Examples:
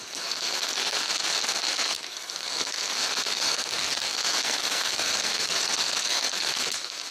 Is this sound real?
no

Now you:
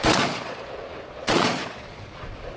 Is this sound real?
no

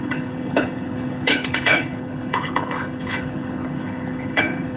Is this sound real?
no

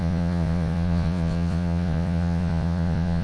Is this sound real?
no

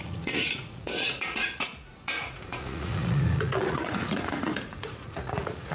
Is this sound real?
no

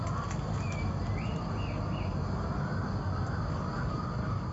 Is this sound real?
yes